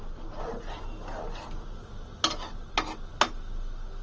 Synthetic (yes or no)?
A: no